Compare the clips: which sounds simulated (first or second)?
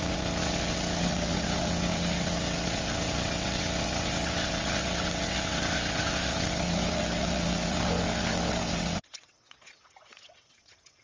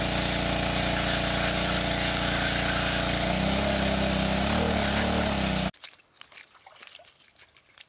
first